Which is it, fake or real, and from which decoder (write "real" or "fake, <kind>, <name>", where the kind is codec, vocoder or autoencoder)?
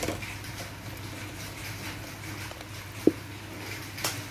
real